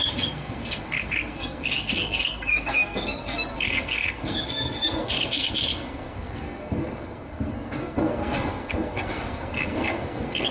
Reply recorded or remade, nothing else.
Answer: remade